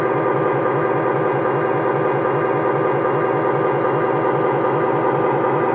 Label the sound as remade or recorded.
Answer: recorded